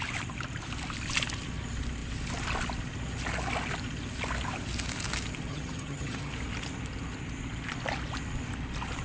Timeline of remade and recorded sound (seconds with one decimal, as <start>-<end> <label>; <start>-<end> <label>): 0.0-5.5 recorded; 5.5-6.3 remade; 6.3-9.0 recorded